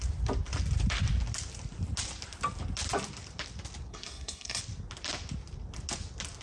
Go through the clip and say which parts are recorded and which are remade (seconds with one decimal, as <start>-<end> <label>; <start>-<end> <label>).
0.0-3.9 recorded; 3.9-4.6 remade; 4.6-6.4 recorded